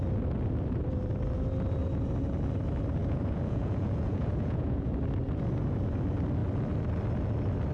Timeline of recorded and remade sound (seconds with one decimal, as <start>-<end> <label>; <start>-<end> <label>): 0.0-3.0 recorded; 3.0-4.9 remade; 4.9-7.7 recorded